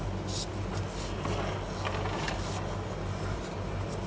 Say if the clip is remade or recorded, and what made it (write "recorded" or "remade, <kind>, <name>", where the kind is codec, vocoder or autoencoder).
recorded